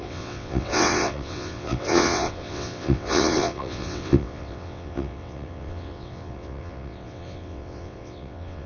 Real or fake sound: fake